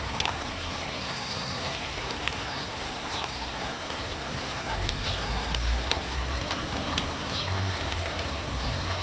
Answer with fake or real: fake